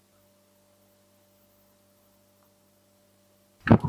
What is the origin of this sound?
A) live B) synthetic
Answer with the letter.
A